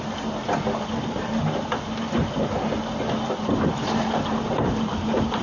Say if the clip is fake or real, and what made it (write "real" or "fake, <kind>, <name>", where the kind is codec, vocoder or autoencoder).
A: real